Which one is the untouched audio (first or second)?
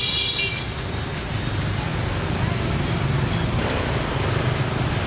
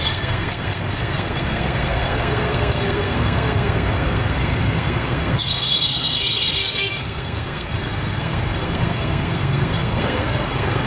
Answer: first